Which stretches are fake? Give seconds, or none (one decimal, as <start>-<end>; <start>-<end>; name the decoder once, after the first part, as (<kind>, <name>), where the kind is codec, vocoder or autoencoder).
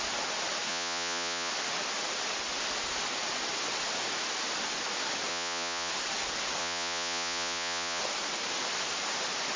0.7-1.5 (vocoder, Vocos); 5.3-5.9; 6.6-8.0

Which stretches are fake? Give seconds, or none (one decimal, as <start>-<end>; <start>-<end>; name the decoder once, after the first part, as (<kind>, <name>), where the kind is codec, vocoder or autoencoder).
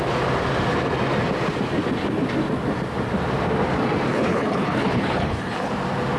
4.1-5.7 (codec, HILCodec)